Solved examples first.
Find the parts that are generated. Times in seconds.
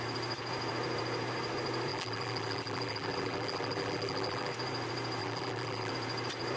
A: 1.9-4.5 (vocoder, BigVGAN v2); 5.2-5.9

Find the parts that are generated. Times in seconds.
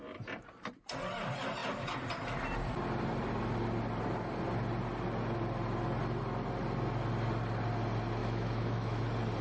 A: 8.2-9.0 (autoencoder, DAC-VAE)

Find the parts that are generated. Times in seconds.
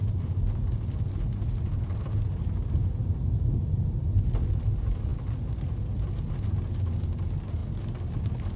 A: none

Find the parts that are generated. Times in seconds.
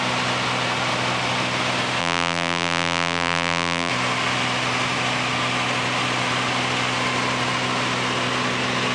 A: 2.0-3.9 (vocoder, BigVGAN v2)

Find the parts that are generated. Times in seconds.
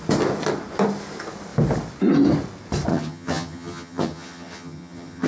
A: 2.9-5.3 (vocoder, HiFi-GAN)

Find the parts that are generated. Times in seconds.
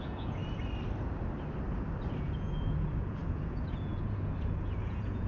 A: 0.0-0.4 (vocoder, Vocos); 2.2-5.3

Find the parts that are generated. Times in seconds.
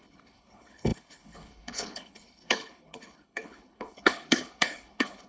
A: 0.0-5.3 (codec, HILCodec)